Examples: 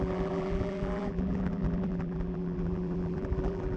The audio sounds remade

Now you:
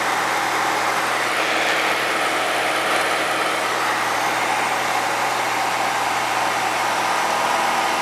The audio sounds recorded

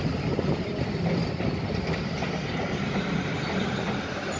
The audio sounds recorded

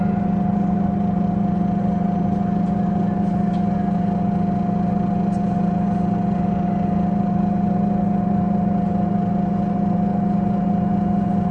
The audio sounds recorded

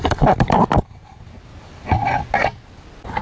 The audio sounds recorded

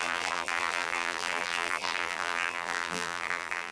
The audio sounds remade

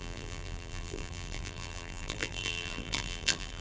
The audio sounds remade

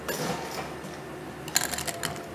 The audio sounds recorded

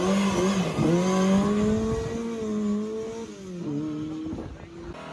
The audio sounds recorded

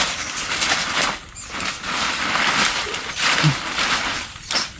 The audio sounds recorded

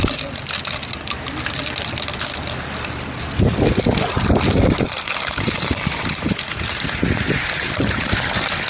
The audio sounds recorded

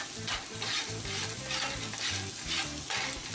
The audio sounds recorded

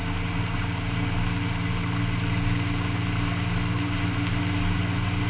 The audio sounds recorded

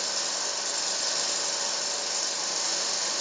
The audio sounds recorded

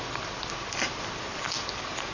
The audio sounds remade